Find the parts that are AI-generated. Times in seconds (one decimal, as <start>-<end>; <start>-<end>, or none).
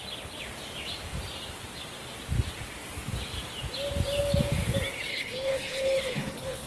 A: 5.1-6.7